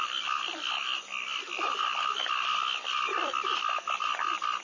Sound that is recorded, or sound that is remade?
recorded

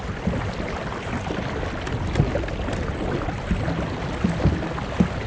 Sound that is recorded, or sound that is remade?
recorded